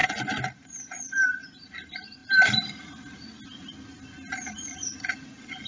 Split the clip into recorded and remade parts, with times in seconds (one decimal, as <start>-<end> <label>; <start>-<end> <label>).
0.0-5.7 recorded